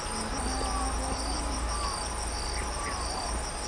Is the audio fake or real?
real